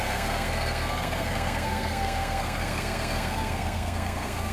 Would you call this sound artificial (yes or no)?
yes